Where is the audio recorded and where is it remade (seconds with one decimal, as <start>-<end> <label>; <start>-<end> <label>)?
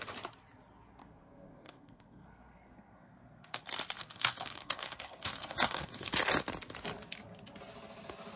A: 0.0-1.0 recorded; 1.0-3.6 remade; 3.6-4.0 recorded; 4.0-6.1 remade; 6.1-8.4 recorded